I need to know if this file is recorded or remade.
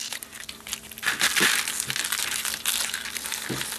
recorded